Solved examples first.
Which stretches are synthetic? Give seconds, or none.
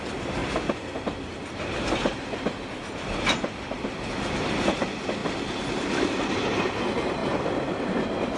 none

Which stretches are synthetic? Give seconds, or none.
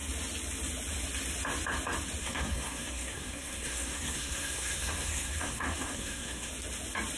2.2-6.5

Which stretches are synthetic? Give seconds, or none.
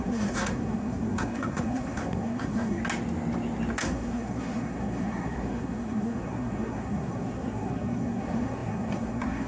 0.0-2.8; 3.8-9.5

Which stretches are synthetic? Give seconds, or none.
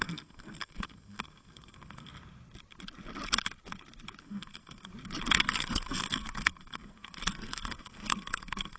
0.0-2.1; 4.2-4.9; 5.4-8.8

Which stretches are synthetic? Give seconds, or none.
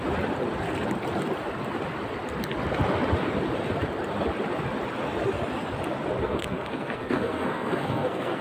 6.2-8.4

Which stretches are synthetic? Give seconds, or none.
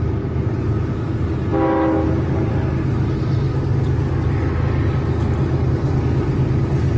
none